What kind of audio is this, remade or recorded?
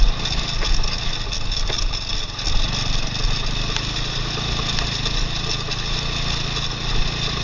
recorded